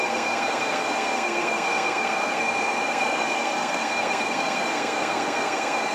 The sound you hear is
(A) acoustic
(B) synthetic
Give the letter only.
B